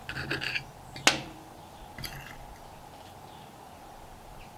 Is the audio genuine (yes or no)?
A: yes